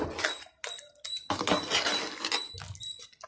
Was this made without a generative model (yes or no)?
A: yes